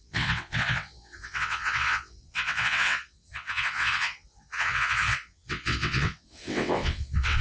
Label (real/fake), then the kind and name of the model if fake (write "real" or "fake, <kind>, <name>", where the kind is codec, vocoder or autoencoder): fake, vocoder, WaveNeXt